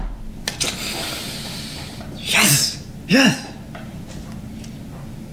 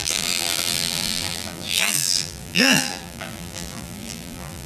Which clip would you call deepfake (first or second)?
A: second